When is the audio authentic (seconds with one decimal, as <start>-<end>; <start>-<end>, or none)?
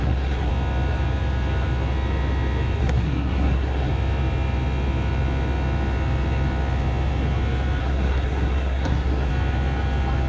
0.5-2.8; 3.9-7.8; 9.3-10.3